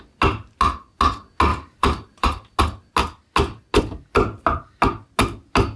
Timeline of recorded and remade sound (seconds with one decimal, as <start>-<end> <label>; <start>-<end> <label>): 0.0-1.5 recorded; 1.5-2.6 remade; 2.6-5.8 recorded